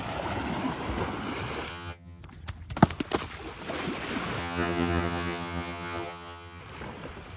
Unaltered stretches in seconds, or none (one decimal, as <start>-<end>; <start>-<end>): 0.0-1.7; 2.2-4.4; 6.6-7.4